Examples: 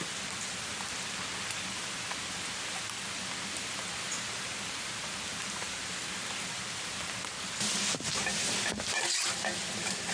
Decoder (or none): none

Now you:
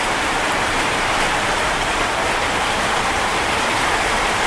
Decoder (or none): vocoder, BigVGAN v2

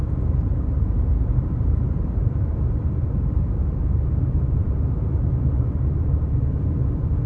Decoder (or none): vocoder, BigVGAN v2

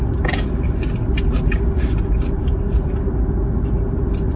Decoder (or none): none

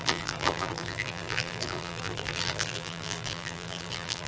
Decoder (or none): vocoder, BigVGAN v2